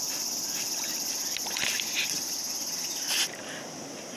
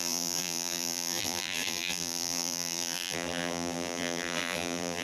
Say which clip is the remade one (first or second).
second